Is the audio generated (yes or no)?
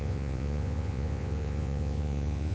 yes